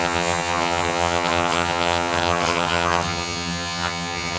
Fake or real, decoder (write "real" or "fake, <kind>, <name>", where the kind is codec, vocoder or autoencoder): fake, vocoder, HiFi-GAN